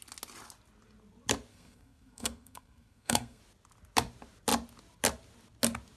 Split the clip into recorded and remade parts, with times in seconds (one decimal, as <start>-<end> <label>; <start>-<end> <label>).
0.0-1.5 recorded; 1.5-3.4 remade; 3.4-6.0 recorded